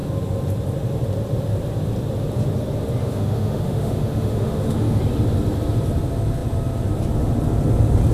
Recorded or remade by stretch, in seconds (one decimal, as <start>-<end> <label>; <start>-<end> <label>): 0.0-3.0 recorded; 3.0-5.0 remade; 5.0-8.1 recorded